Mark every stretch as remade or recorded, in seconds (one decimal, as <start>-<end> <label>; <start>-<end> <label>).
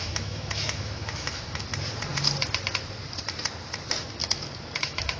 0.0-1.7 remade; 1.7-4.8 recorded; 4.8-5.2 remade